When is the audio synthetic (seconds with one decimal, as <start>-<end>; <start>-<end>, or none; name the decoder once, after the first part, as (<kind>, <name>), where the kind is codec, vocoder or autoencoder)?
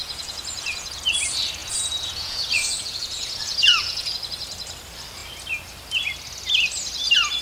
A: 0.0-1.0 (vocoder, Vocos); 1.6-4.1